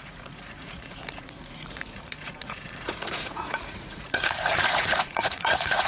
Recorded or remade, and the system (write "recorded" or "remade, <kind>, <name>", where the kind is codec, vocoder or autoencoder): remade, vocoder, Vocos